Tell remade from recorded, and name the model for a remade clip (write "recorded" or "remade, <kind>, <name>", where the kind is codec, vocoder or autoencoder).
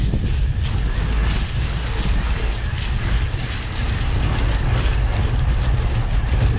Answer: recorded